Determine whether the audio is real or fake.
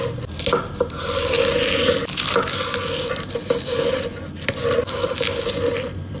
real